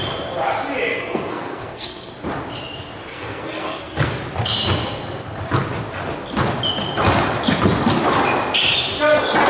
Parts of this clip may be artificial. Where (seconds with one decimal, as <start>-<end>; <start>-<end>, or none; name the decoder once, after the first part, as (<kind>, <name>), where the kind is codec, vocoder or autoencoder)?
0.9-2.1 (codec, SNAC); 3.1-4.2